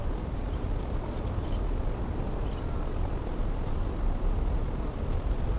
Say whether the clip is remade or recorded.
remade